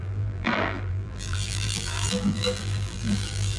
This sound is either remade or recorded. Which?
remade